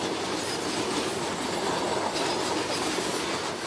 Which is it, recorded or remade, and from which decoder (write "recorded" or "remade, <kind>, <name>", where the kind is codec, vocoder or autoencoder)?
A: recorded